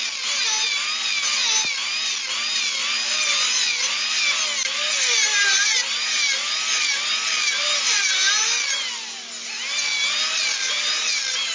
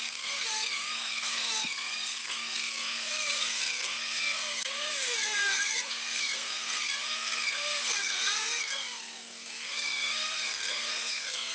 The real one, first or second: first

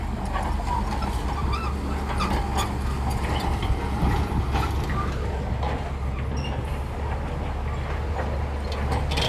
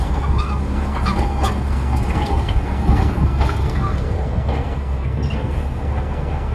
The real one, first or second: first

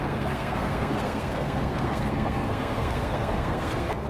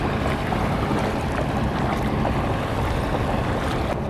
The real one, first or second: second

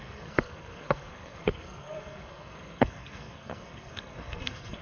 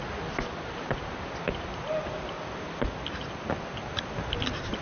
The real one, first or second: second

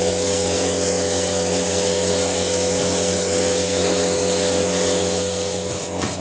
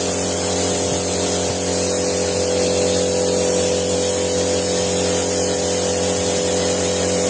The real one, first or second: second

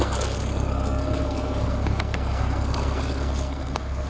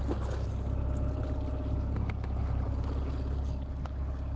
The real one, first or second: second